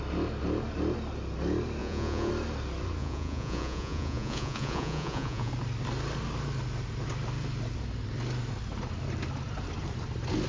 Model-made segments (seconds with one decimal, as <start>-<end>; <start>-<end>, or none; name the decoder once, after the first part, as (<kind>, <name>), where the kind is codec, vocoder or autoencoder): 1.8-2.3 (vocoder, Vocos); 3.0-5.5